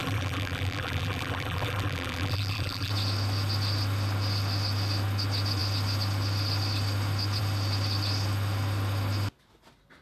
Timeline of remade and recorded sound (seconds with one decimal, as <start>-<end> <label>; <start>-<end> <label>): 0.0-2.9 remade; 2.9-10.0 recorded